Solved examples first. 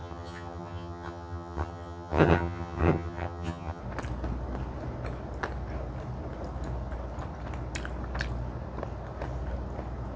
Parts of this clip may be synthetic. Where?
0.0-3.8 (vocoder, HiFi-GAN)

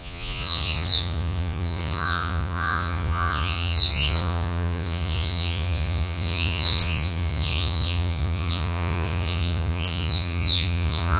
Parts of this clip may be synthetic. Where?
0.0-11.2 (vocoder, Vocos)

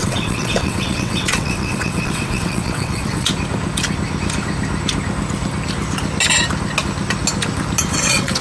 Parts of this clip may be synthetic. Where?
0.0-3.3 (vocoder, WaveNeXt); 7.9-8.4

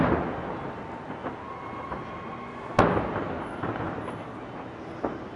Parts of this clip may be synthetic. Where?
none